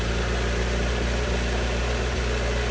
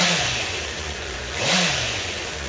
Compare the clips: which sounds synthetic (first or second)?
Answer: second